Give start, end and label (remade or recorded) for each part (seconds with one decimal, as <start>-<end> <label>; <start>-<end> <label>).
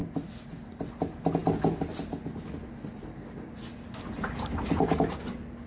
0.0-5.7 recorded